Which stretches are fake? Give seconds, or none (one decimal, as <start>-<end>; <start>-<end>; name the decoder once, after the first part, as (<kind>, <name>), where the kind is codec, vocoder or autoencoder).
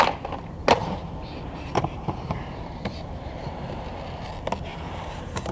0.8-3.5 (vocoder, BigVGAN v2); 4.7-5.5